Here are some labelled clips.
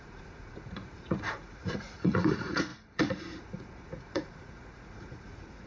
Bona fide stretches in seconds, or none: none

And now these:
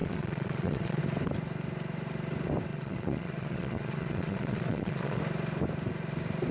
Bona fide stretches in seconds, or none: 1.0-2.7; 5.2-6.5